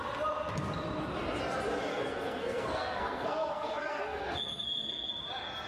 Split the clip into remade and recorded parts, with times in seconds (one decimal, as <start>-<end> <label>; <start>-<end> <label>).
0.0-1.9 recorded; 1.9-5.1 remade; 5.1-5.7 recorded